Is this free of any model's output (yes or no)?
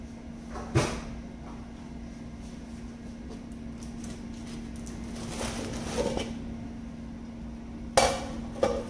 yes